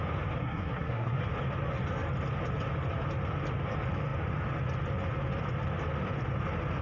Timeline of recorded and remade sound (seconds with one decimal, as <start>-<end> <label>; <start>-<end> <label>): 0.0-0.4 recorded; 0.4-1.2 remade; 1.2-6.8 recorded